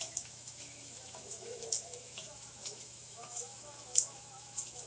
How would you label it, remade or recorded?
remade